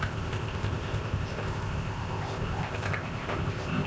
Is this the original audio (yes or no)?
no